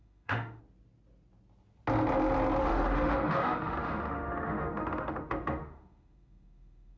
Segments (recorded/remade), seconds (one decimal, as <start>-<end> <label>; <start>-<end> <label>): 0.0-0.6 remade; 0.6-2.6 recorded; 2.6-7.0 remade